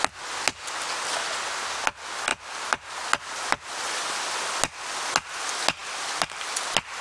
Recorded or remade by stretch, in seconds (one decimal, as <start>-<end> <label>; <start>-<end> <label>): 0.0-7.0 recorded